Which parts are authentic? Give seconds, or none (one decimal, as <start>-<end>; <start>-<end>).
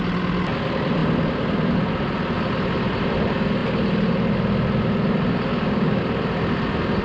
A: 0.0-5.5; 6.0-7.0